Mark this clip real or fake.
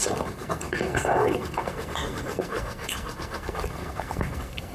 fake